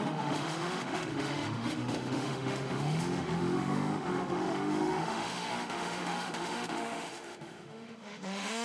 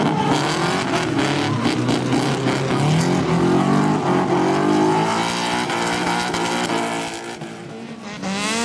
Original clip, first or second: second